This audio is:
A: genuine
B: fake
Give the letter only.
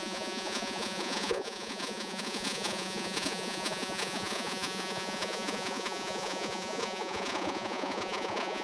B